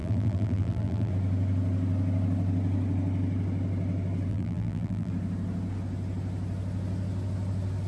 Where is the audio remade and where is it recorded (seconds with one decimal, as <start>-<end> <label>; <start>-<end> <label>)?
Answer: 0.0-1.1 remade; 1.1-4.3 recorded; 4.3-5.1 remade; 5.1-7.9 recorded